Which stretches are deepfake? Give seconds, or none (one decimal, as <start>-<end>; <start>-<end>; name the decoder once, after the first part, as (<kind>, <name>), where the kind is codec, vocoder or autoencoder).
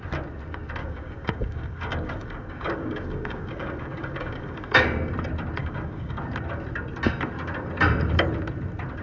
0.8-4.8 (codec, DAC); 5.6-6.2